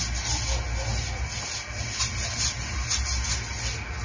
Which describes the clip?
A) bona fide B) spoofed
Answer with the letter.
A